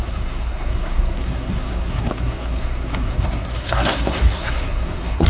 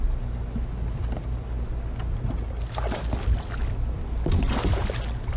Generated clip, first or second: first